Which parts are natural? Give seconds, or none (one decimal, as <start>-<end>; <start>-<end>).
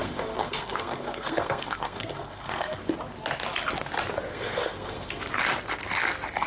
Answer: 2.8-4.3; 5.2-6.5